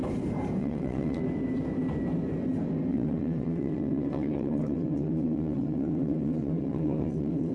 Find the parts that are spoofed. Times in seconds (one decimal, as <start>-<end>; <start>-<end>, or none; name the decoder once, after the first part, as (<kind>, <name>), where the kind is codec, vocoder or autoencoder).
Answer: 0.6-1.2 (vocoder, WaveNeXt); 2.9-7.5